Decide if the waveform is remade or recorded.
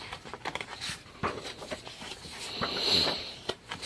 remade